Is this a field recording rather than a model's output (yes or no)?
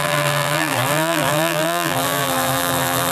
no